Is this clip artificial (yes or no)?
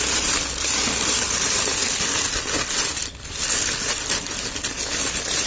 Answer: no